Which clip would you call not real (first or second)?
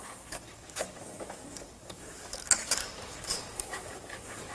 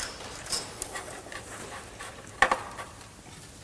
first